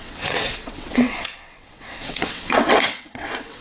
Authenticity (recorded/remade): remade